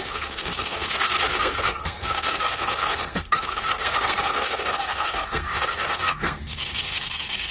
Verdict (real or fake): fake